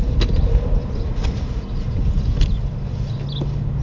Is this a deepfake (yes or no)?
no